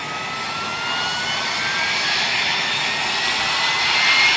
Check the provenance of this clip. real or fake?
real